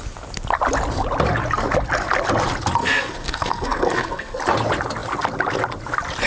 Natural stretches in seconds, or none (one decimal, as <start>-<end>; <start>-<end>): 0.0-2.8; 4.4-6.3